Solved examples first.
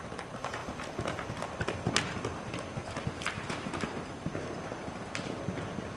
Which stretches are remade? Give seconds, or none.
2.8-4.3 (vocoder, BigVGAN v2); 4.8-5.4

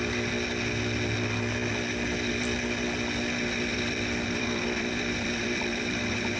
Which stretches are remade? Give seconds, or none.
3.7-6.4 (vocoder, BigVGAN v2)

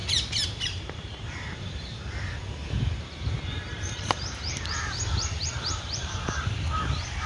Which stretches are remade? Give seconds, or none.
0.5-7.3 (vocoder, BigVGAN v2)

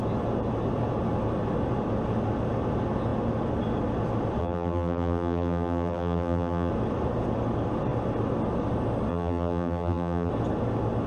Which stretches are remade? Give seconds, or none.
4.4-6.7 (vocoder, BigVGAN v2); 9.1-10.3

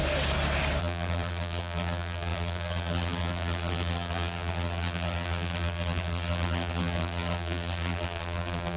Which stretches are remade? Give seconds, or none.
0.8-8.8 (vocoder, BigVGAN v2)

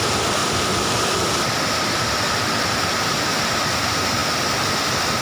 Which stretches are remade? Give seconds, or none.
0.4-3.5 (vocoder, BigVGAN v2)